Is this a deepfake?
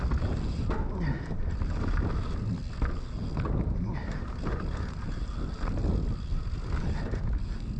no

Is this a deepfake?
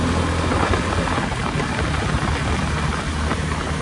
no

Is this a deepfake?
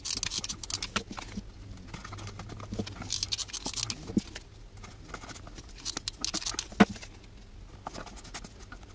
no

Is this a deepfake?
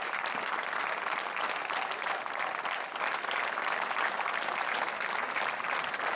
no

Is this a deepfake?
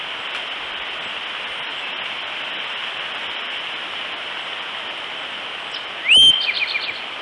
no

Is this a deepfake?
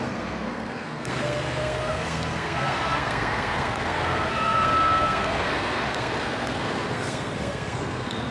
yes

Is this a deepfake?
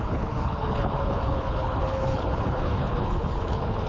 yes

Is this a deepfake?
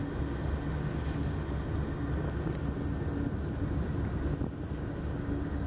no